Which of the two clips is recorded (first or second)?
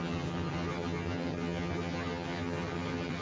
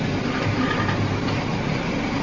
second